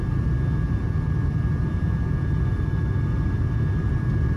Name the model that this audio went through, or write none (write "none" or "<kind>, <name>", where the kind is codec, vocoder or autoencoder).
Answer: none